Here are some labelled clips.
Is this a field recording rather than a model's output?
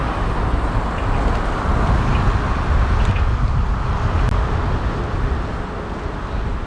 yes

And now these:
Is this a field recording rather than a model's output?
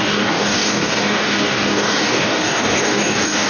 no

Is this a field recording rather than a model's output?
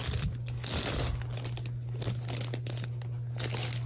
yes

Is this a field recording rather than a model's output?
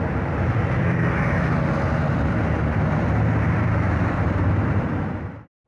no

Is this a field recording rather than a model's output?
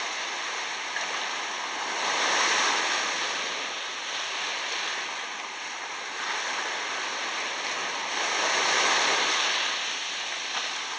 yes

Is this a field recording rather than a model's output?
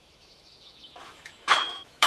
no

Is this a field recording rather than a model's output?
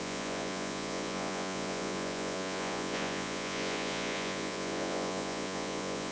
no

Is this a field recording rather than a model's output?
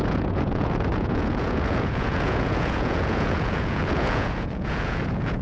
no